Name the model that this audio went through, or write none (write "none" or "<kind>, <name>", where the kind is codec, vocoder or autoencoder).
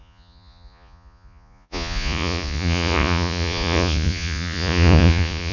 vocoder, Vocos